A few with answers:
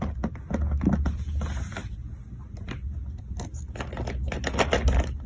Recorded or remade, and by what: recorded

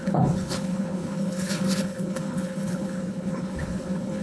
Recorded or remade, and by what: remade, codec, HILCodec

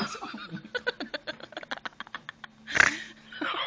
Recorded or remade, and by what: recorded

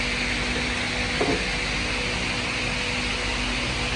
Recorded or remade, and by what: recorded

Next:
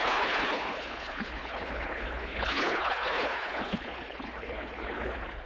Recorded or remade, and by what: remade, codec, HILCodec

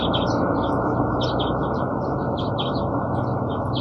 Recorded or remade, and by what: recorded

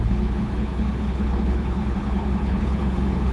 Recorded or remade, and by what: remade, codec, HILCodec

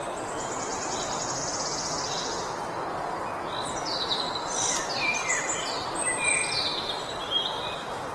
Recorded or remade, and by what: recorded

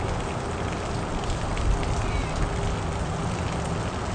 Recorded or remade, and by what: recorded